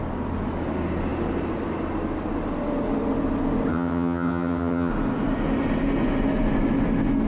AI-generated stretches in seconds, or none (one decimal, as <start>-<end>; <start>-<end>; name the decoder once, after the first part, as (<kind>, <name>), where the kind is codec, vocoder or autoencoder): 3.7-4.9 (vocoder, HiFi-GAN)